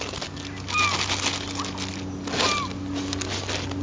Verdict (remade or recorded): recorded